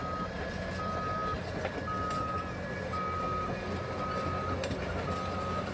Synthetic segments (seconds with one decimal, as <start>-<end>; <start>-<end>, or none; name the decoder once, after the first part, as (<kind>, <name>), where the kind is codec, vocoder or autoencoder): none